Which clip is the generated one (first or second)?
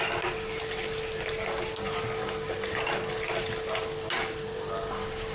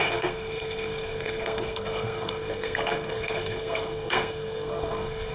second